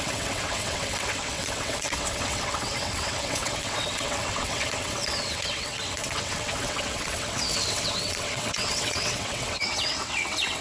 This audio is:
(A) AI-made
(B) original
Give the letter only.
A